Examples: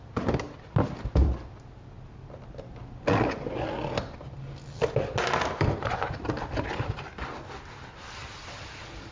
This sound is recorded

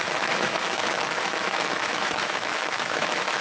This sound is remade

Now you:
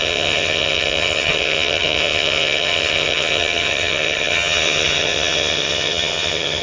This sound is remade